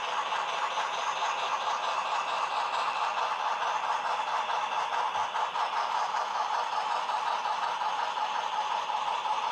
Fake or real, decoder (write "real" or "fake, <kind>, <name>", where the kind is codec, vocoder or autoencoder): real